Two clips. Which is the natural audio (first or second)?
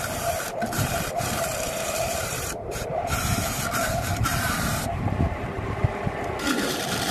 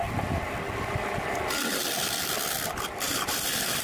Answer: second